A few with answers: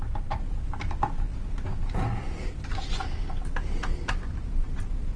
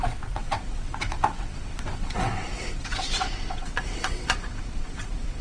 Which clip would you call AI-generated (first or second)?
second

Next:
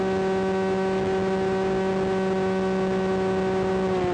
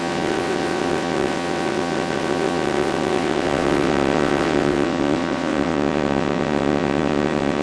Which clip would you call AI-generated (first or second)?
second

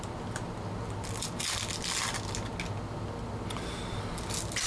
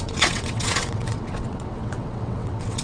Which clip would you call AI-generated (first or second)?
second